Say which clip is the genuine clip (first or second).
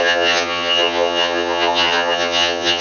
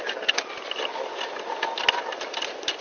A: second